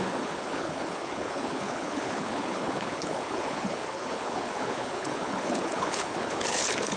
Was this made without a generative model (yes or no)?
no